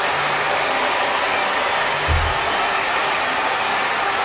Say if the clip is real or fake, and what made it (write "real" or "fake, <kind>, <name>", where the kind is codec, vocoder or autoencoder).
real